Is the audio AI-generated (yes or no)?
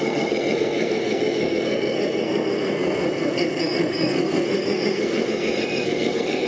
yes